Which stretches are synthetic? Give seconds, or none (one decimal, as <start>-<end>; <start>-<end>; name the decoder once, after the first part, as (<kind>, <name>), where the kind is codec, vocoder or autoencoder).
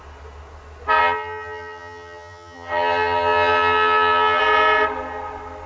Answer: 1.0-4.4 (vocoder, HiFi-GAN)